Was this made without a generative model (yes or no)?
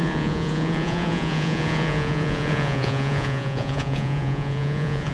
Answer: no